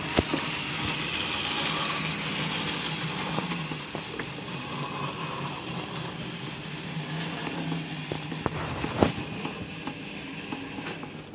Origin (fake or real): real